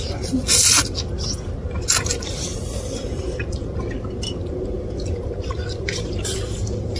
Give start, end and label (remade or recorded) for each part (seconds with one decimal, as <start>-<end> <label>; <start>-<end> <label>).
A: 0.0-7.0 recorded